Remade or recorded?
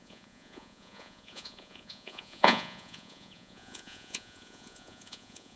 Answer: remade